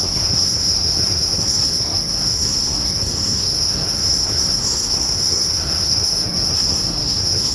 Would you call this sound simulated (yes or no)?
yes